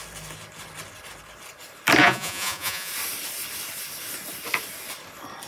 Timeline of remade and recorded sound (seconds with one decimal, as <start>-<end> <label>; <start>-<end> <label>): 0.0-2.0 recorded; 2.0-2.9 remade; 2.9-5.5 recorded